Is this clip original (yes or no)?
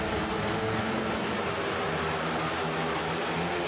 yes